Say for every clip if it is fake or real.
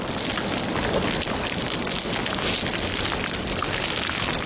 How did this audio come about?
real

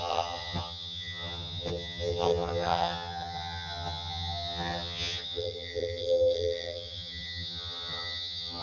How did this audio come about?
fake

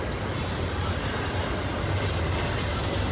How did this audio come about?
real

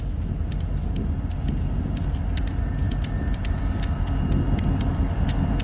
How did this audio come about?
real